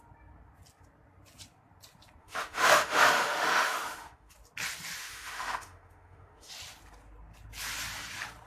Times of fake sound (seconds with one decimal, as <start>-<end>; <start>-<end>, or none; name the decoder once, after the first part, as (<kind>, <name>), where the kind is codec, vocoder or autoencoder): 2.2-4.3 (autoencoder, DAC-VAE); 5.0-6.5